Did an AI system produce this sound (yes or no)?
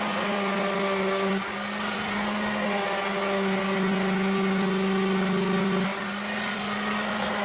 no